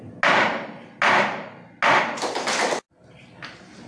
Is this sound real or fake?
real